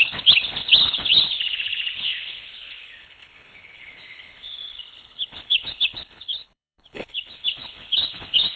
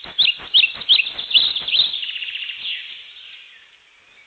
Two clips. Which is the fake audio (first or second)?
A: first